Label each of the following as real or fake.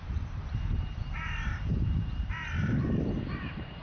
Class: fake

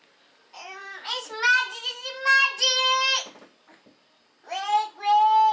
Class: real